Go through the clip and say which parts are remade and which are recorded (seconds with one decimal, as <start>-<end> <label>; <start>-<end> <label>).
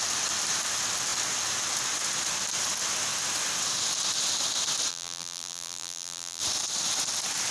0.0-4.9 recorded; 4.9-6.4 remade; 6.4-7.5 recorded